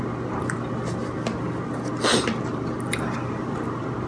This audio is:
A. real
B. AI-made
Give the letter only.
A